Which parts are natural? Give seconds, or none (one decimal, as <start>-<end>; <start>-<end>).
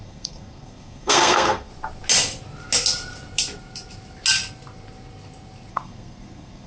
1.7-5.7